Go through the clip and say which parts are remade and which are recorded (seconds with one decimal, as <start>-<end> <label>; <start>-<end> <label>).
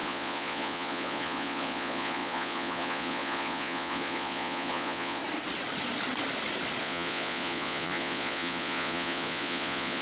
0.0-5.2 remade; 5.2-6.8 recorded; 6.8-10.0 remade